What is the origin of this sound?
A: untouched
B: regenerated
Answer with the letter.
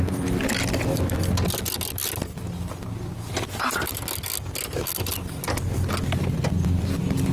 A